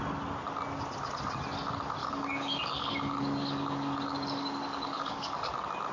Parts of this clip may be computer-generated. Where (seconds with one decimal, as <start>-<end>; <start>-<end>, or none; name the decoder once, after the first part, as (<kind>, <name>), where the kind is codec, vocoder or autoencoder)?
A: 2.0-5.5 (codec, DAC)